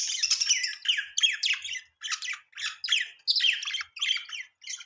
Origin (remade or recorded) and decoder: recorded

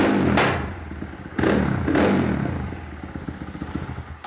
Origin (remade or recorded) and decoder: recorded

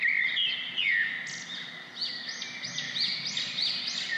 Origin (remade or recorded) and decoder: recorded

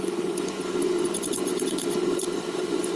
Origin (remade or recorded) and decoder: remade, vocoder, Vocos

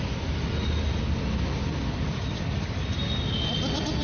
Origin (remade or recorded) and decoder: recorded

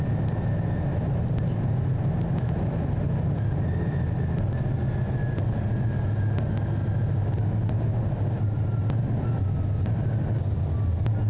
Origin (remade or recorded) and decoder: recorded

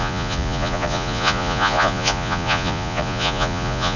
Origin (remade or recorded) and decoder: remade, vocoder, Vocos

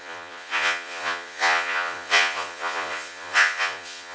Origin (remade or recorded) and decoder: remade, vocoder, Vocos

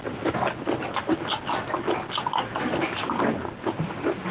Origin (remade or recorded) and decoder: recorded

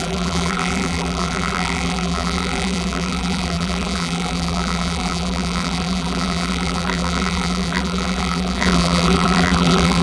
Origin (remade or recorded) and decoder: remade, vocoder, BigVGAN v2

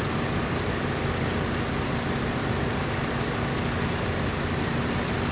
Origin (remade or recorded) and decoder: recorded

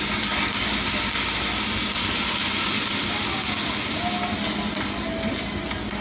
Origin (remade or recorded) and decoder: recorded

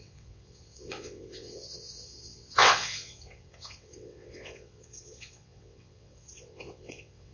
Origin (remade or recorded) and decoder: remade, vocoder, WaveNeXt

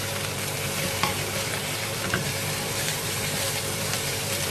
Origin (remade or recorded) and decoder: remade, vocoder, BigVGAN v2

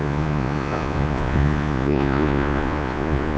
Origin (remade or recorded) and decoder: remade, vocoder, Vocos